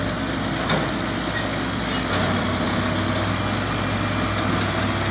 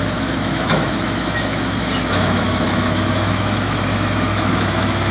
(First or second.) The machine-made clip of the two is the second